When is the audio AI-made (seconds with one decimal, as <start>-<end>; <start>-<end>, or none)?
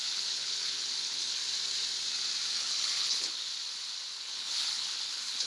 0.0-1.4; 2.6-3.5; 4.1-5.5